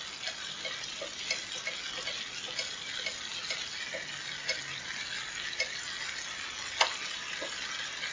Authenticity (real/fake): real